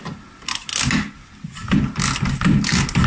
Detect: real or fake real